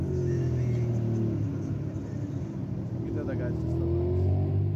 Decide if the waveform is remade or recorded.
recorded